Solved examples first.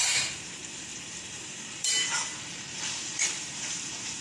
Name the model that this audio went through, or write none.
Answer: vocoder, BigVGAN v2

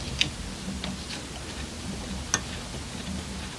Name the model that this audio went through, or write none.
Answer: none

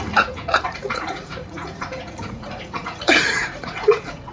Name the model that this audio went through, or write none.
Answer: vocoder, Vocos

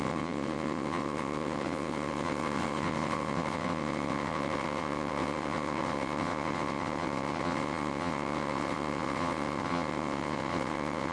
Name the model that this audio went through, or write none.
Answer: vocoder, WaveNeXt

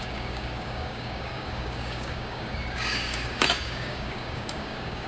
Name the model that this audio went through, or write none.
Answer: codec, DAC